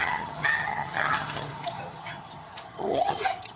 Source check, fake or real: fake